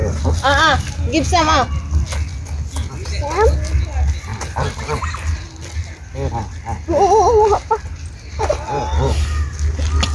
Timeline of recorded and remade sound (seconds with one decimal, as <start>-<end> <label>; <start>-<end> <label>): 0.0-10.1 recorded